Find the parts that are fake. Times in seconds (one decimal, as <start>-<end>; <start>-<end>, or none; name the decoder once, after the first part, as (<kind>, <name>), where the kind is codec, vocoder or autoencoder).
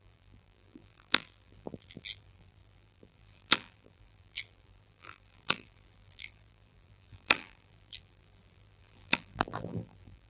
0.0-10.3 (vocoder, BigVGAN v2)